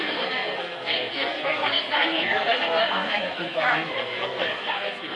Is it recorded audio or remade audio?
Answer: remade